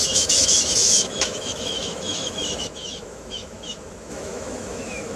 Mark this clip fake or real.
fake